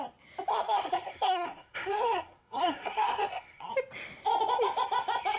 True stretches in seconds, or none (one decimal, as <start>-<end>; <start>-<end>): 0.0-0.5; 3.7-5.4

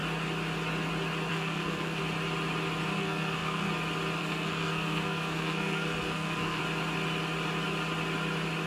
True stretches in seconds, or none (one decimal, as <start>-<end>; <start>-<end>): 0.0-1.3; 2.0-2.9; 3.7-4.2; 6.6-8.7